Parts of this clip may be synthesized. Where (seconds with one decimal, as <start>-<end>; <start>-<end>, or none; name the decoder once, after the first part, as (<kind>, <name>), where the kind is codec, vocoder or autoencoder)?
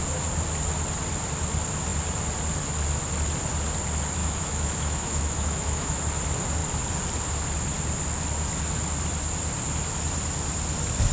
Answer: 4.2-6.0 (autoencoder, DAC-VAE)